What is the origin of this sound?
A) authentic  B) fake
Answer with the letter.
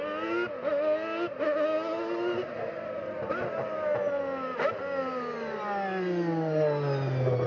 A